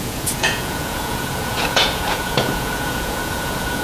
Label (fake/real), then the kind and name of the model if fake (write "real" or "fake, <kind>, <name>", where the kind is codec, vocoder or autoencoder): fake, vocoder, Vocos